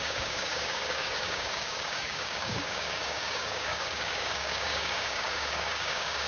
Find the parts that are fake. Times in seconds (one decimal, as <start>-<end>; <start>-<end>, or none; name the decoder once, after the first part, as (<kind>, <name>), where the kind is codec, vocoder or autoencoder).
0.0-6.3 (codec, DAC)